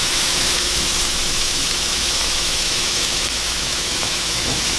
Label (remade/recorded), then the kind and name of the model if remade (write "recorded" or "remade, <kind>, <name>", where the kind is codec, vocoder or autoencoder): remade, autoencoder, DAC-VAE